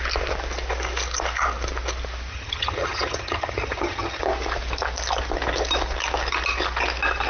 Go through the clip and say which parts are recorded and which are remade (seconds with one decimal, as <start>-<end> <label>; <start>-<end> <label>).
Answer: 0.0-2.3 recorded; 2.3-4.2 remade; 4.2-7.3 recorded